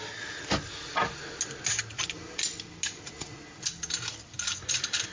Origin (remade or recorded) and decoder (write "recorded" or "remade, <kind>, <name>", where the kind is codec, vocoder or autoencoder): recorded